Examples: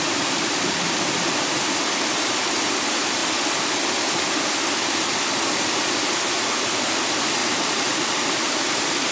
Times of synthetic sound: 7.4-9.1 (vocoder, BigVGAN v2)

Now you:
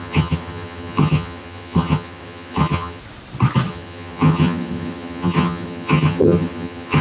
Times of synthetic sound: 0.0-3.0 (vocoder, HiFi-GAN); 3.7-7.0

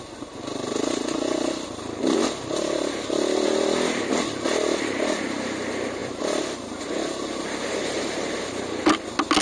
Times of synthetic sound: none

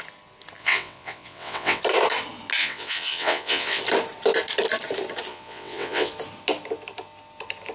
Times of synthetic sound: 0.6-1.8 (vocoder, WaveNeXt); 2.6-3.8; 5.3-6.1